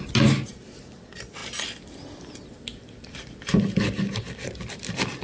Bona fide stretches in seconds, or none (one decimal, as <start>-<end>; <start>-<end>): 0.0-5.2